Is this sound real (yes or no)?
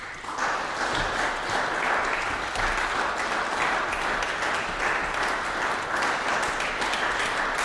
yes